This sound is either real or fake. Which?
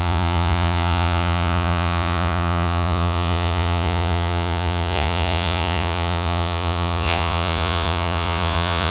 fake